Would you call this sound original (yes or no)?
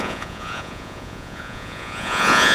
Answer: no